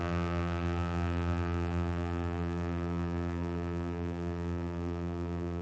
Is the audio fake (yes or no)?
yes